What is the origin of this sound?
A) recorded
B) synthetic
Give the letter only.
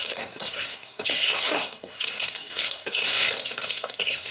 B